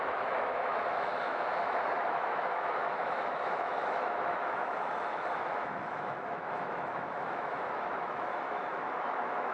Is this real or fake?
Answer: fake